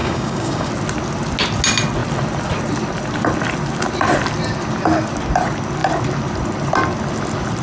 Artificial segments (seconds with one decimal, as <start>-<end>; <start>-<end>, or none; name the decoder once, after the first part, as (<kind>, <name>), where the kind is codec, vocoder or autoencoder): 0.0-0.7 (codec, DAC)

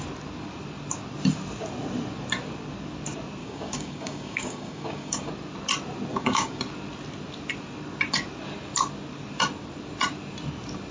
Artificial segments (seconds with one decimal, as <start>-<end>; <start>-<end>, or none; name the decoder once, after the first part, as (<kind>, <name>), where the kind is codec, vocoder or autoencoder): 3.4-5.3 (codec, DAC); 6.1-6.6

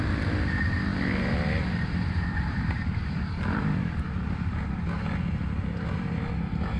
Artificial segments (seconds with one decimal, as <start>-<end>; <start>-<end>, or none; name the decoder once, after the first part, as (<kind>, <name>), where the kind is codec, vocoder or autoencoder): 3.0-4.1 (codec, DAC)

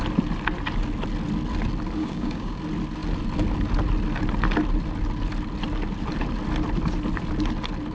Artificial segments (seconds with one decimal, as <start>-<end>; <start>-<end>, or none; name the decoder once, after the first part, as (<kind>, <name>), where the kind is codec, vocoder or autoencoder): 2.0-2.6 (codec, DAC)

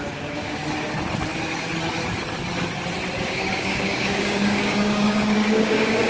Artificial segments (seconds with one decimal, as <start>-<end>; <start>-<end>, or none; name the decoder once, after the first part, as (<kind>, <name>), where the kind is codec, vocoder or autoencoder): 0.0-0.6 (codec, DAC); 3.3-6.1

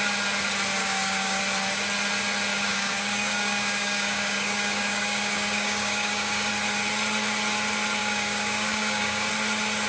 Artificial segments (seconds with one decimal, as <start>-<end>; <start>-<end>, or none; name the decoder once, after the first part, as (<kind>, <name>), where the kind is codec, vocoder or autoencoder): 0.8-1.4 (codec, DAC); 2.5-6.5; 8.0-9.3

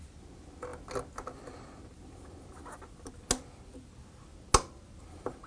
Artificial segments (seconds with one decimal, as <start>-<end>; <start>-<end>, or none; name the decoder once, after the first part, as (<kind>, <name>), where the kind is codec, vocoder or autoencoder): none